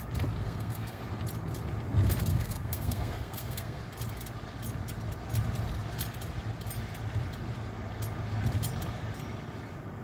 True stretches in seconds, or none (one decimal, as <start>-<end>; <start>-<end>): 0.0-0.4; 1.0-2.3; 3.8-10.0